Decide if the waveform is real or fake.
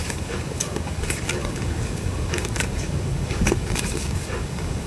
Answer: fake